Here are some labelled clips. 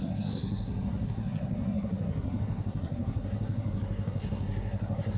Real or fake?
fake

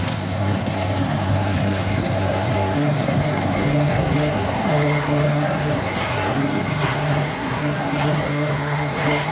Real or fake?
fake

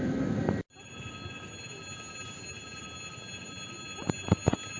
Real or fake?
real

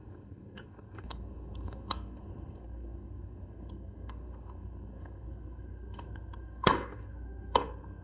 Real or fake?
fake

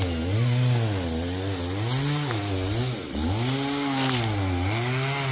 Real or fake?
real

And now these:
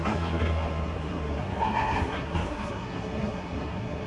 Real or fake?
fake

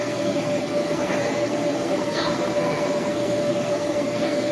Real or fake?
fake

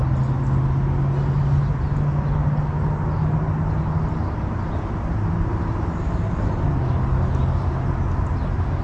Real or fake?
real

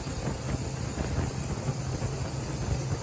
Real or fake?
real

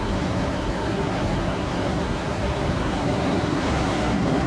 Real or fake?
fake